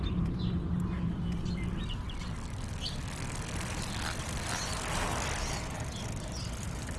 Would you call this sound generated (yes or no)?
no